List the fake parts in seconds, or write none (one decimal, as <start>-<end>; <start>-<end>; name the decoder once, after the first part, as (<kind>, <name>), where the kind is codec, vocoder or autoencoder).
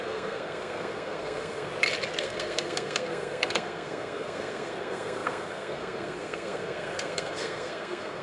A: 0.0-1.7 (codec, SNAC); 2.2-8.2